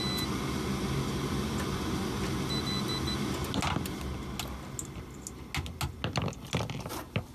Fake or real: real